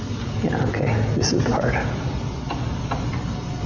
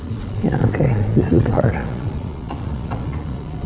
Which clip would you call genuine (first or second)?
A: first